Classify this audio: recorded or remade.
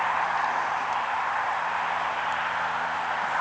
remade